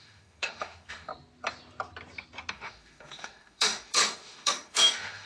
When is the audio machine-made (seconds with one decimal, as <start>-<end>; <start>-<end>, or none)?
0.0-1.1; 2.5-5.3

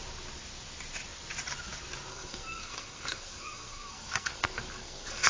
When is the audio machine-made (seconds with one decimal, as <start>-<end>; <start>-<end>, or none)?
2.1-5.3

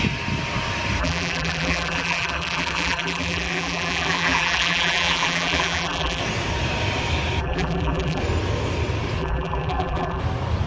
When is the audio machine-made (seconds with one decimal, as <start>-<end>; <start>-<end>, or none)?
1.0-6.2; 7.4-8.2; 9.2-10.2